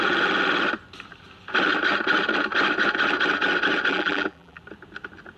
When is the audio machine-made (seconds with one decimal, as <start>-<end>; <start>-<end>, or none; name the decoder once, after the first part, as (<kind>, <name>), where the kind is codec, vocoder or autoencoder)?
3.9-4.6 (vocoder, BigVGAN v2)